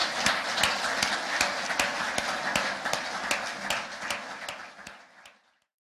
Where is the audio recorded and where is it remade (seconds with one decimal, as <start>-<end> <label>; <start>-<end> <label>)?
0.0-5.9 recorded